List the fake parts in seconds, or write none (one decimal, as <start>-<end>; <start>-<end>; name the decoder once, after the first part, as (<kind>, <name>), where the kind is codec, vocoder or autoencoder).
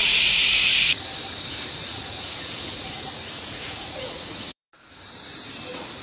0.0-1.0 (vocoder, Vocos); 1.8-4.7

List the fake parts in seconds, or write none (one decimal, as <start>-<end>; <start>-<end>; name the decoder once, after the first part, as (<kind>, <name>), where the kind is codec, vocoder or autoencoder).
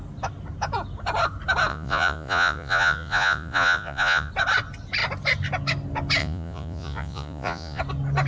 1.7-4.3 (vocoder, Vocos); 6.2-7.8